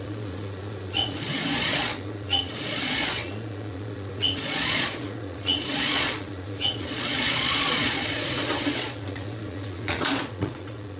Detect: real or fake fake